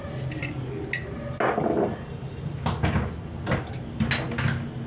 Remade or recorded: recorded